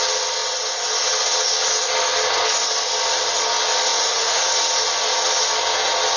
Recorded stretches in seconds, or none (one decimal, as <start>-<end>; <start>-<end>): 0.0-3.9; 4.5-6.2